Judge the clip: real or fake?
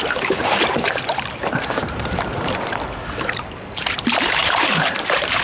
fake